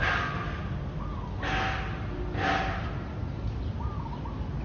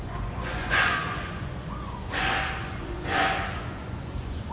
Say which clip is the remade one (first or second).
second